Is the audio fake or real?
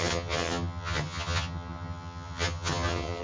fake